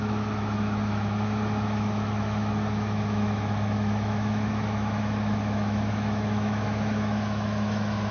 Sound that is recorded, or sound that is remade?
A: remade